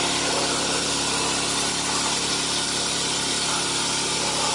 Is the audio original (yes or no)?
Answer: yes